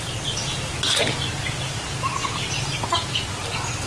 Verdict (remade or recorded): recorded